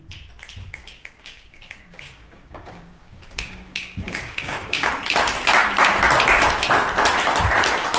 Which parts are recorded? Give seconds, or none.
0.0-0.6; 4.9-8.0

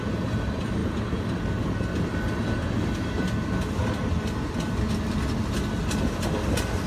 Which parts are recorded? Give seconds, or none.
0.0-6.9

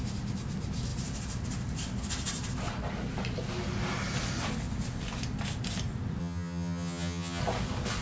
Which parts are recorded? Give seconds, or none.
0.0-6.2; 7.4-8.0

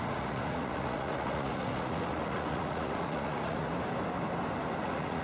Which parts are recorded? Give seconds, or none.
3.7-4.8

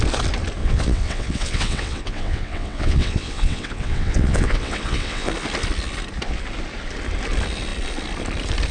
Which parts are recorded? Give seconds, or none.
0.0-0.6; 5.3-8.7

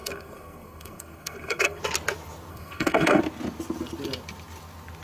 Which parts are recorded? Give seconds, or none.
1.8-2.5; 3.2-5.0

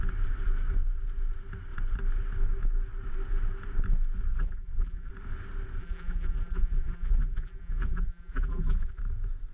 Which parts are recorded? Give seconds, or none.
0.0-4.3; 5.1-5.8; 9.0-9.5